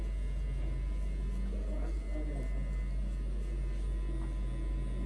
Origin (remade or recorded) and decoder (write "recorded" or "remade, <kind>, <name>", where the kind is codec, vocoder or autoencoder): recorded